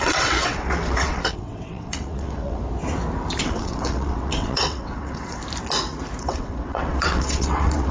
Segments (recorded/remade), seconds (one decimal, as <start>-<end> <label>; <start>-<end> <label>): 0.0-2.6 remade; 2.6-3.4 recorded; 3.4-5.4 remade; 5.4-6.2 recorded; 6.2-7.9 remade